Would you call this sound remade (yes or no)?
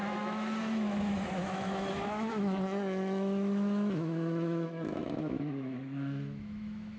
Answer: yes